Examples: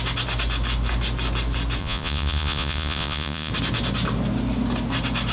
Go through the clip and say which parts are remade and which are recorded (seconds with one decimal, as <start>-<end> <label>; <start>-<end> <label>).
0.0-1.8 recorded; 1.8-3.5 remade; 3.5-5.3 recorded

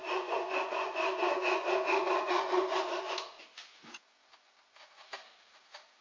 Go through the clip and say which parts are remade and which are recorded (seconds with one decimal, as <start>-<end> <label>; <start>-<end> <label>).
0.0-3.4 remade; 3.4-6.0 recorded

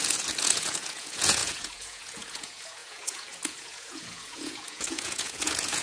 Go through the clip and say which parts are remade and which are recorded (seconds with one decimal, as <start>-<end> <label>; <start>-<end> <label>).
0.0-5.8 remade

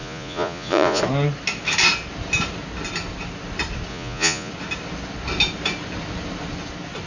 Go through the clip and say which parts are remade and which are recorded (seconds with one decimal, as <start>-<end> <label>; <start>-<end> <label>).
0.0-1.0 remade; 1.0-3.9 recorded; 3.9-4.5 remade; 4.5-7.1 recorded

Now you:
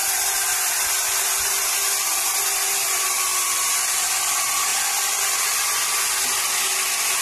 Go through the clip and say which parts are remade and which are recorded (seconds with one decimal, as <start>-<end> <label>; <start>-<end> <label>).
0.0-7.2 recorded